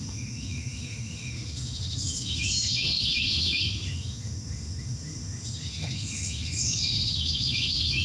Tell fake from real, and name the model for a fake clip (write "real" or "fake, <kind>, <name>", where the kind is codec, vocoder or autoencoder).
fake, autoencoder, DAC-VAE